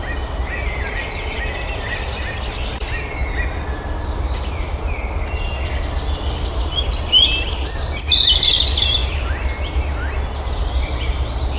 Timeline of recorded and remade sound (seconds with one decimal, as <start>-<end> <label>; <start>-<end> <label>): 0.0-11.6 recorded